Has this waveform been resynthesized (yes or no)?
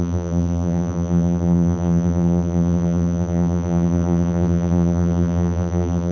yes